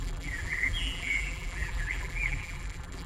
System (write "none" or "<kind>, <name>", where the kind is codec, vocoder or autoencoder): vocoder, BigVGAN v2